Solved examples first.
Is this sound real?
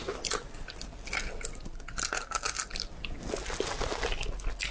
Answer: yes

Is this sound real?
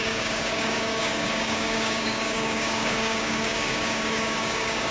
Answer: no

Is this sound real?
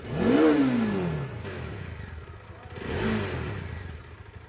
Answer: yes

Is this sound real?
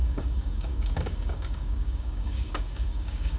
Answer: no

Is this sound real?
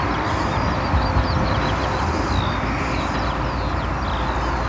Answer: yes